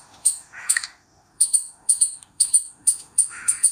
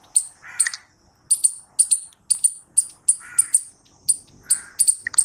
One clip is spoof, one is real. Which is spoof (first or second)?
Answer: first